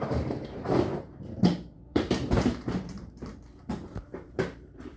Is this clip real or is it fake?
fake